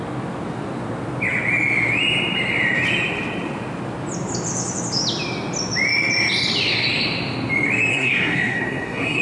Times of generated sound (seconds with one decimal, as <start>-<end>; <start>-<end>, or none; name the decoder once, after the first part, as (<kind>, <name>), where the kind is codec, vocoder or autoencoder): 7.9-9.2 (codec, SNAC)